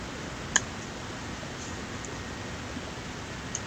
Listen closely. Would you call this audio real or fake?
real